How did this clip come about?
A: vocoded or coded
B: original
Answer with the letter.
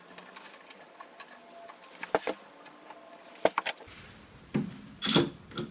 B